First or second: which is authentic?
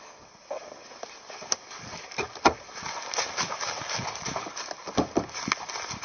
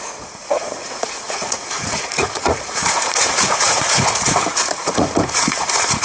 first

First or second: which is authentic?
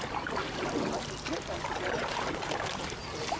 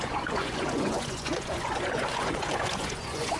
first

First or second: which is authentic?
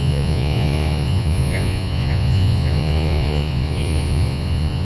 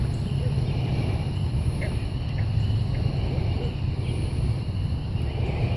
second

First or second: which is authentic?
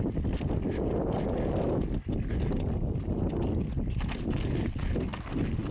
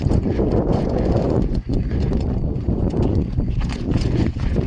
first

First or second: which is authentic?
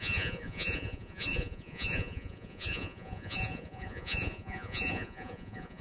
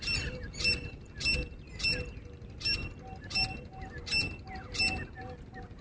second